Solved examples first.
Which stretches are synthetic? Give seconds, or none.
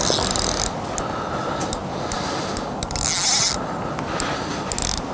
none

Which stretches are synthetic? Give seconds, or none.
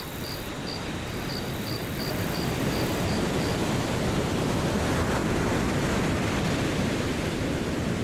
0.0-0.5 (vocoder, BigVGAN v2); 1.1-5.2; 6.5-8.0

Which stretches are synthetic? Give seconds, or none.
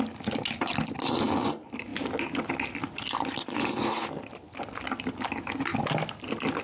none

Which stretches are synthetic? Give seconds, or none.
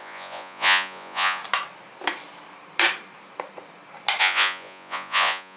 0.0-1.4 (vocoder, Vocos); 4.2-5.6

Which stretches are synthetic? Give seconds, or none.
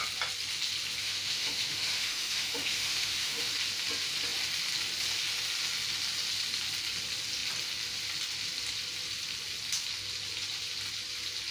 1.0-3.5 (autoencoder, DAC-VAE)